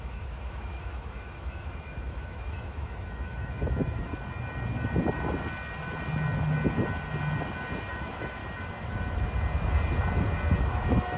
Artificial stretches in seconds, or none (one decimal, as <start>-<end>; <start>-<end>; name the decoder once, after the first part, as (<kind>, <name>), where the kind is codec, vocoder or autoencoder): 0.0-4.1 (autoencoder, DAC-VAE); 7.9-8.4; 10.6-11.2